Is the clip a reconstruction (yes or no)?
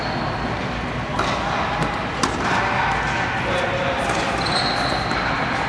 no